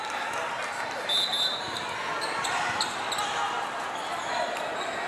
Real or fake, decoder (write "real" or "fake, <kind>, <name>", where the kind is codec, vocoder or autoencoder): real